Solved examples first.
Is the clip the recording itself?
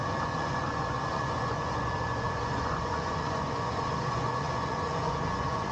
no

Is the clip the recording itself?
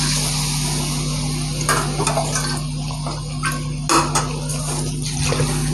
yes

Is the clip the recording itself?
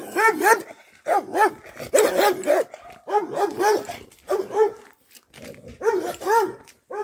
yes